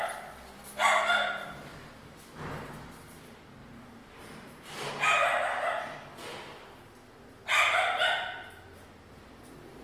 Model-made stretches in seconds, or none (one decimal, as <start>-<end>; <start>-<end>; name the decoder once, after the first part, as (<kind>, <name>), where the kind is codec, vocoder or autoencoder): 3.6-4.9 (vocoder, BigVGAN v2)